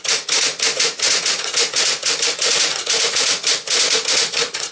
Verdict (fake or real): fake